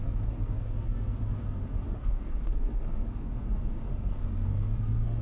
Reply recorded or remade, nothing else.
remade